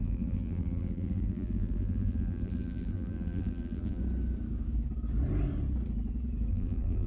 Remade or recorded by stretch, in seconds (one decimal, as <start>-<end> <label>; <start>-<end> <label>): 0.0-4.0 remade; 4.0-6.5 recorded; 6.5-7.1 remade